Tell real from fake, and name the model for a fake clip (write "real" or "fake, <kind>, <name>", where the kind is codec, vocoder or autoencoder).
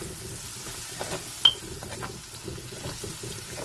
real